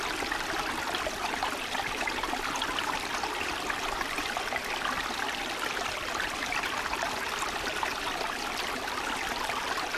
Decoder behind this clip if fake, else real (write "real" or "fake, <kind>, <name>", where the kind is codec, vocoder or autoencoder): real